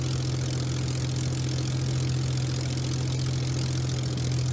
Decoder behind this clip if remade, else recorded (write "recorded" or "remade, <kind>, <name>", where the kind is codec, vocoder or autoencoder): recorded